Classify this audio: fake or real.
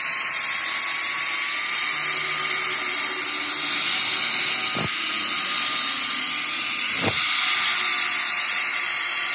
real